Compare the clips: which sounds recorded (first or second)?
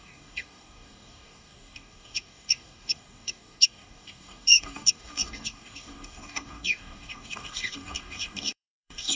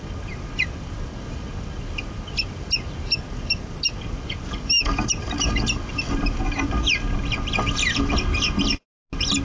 second